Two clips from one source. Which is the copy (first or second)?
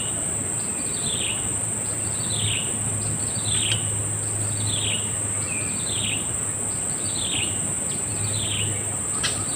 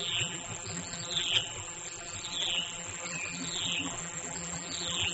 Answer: second